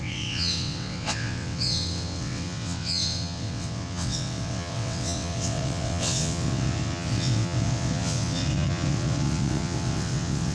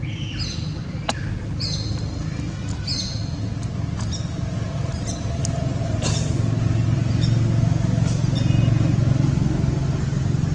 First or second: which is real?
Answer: second